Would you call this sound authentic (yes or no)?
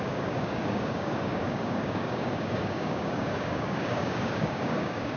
no